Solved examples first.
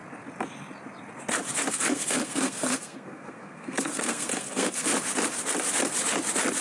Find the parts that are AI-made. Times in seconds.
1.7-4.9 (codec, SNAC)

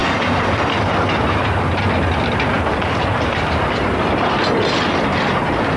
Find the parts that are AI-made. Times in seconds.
none